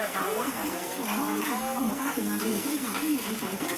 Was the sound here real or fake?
fake